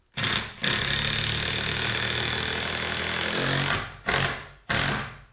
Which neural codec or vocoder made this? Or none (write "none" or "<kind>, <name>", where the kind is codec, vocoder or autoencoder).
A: none